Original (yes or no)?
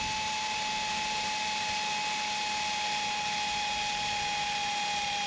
yes